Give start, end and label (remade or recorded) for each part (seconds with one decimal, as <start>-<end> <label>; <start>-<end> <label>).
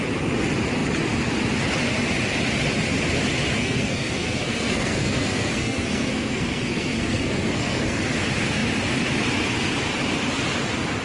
0.0-3.6 recorded; 3.6-8.0 remade; 8.0-11.0 recorded